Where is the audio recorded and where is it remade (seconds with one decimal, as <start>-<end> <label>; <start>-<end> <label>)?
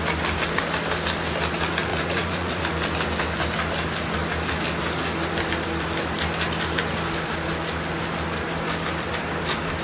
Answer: 0.0-1.9 recorded; 1.9-2.6 remade; 2.6-9.8 recorded